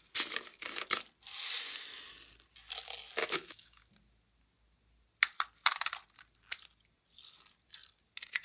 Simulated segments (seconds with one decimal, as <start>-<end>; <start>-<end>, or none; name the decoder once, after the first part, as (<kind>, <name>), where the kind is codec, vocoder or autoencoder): 0.5-1.0 (autoencoder, DAC-VAE); 3.2-3.9